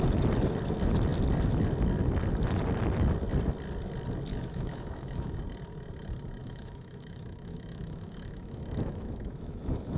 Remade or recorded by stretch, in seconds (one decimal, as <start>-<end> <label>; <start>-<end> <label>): 0.0-4.3 recorded; 4.3-5.4 remade; 5.4-6.4 recorded; 6.4-10.0 remade